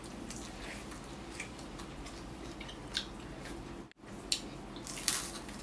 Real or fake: real